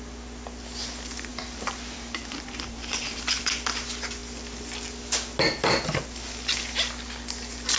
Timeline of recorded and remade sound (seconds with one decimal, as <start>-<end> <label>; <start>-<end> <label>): 0.0-1.3 recorded; 1.3-3.4 remade; 3.4-7.8 recorded